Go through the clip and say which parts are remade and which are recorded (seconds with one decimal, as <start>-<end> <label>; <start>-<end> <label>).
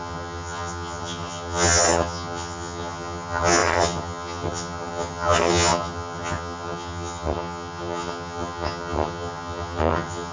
0.0-10.3 remade